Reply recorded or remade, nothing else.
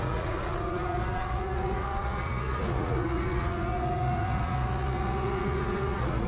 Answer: remade